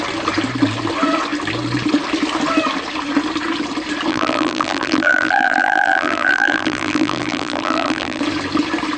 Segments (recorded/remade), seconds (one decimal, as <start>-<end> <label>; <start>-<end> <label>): 0.0-4.1 recorded; 4.1-8.2 remade; 8.2-9.0 recorded